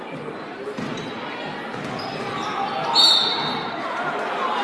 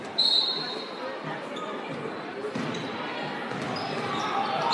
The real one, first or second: first